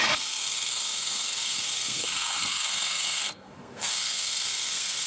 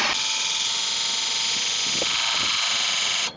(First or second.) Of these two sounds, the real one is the second